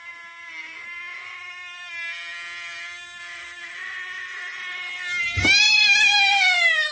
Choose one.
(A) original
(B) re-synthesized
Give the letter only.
A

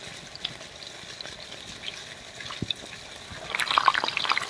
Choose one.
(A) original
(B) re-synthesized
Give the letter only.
A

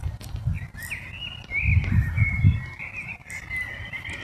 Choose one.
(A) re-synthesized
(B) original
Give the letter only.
B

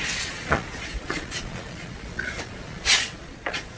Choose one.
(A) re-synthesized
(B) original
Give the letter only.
A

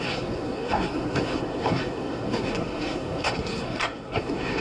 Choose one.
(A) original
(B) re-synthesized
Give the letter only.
B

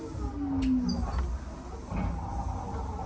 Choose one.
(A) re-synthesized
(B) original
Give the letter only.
B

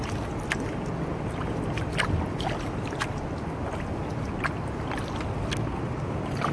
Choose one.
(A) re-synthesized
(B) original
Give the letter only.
B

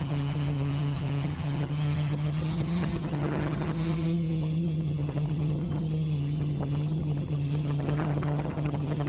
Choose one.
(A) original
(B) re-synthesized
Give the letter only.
B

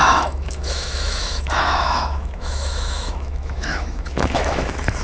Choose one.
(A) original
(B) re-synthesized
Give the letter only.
B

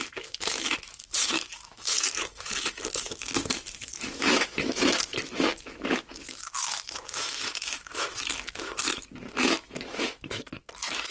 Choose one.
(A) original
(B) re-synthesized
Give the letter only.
B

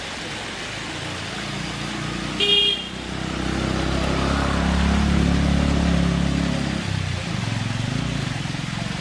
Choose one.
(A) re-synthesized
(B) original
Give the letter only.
B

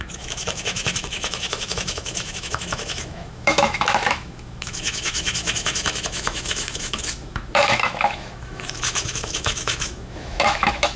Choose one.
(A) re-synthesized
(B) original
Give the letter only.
A